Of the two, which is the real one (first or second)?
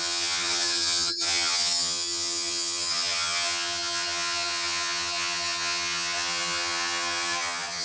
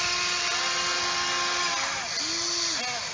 second